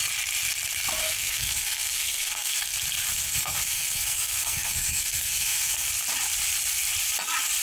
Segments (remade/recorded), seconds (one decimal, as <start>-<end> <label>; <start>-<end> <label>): 0.0-1.0 recorded; 1.0-2.6 remade; 2.6-3.1 recorded; 3.1-5.9 remade; 5.9-7.6 recorded